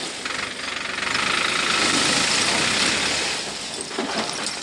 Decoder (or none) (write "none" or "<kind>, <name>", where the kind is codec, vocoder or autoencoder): none